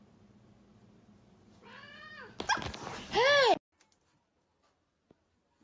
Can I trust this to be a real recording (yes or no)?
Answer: yes